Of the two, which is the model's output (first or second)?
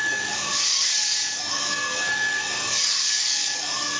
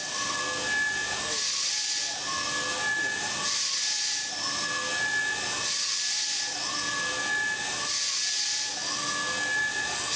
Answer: first